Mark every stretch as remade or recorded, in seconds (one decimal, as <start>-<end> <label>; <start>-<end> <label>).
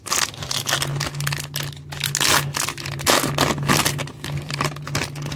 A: 0.0-4.0 recorded; 4.0-4.9 remade; 4.9-5.4 recorded